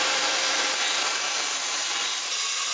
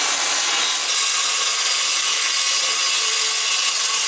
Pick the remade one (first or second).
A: first